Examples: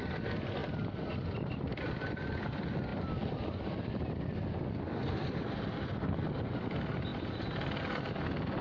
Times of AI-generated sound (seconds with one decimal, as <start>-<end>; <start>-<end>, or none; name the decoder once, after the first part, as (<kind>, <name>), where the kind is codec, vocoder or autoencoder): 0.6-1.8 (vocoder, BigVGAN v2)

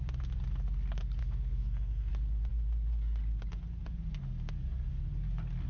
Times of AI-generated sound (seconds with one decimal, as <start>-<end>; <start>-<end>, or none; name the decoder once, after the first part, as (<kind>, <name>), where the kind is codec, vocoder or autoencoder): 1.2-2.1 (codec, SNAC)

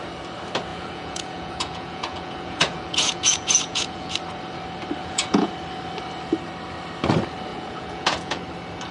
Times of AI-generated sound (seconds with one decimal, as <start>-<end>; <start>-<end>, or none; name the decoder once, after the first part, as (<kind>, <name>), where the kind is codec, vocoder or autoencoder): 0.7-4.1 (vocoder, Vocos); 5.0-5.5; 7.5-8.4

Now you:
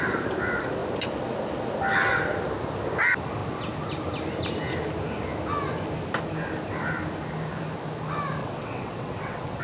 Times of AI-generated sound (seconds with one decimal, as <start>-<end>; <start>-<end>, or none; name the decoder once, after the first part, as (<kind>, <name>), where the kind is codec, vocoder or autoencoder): 8.4-9.6 (vocoder, WaveNeXt)

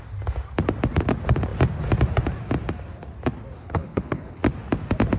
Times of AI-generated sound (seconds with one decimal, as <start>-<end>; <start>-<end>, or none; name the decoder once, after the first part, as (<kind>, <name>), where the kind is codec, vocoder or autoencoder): 3.6-4.4 (codec, HILCodec)